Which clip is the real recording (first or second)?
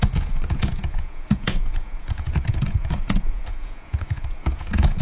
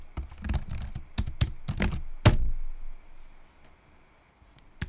second